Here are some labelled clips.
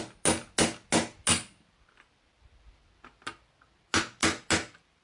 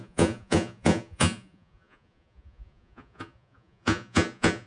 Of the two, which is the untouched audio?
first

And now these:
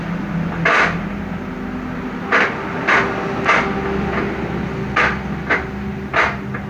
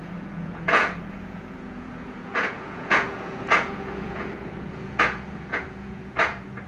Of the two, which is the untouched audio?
first